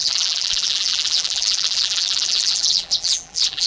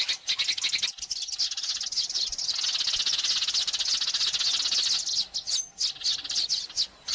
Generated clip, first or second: first